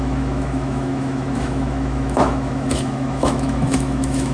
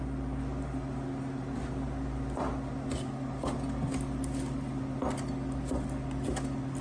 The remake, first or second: first